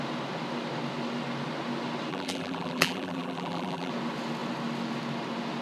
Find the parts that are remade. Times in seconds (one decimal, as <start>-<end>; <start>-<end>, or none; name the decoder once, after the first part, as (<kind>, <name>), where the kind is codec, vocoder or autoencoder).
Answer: 2.1-3.9 (vocoder, BigVGAN v2)